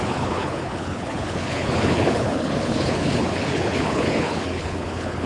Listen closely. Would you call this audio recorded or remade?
remade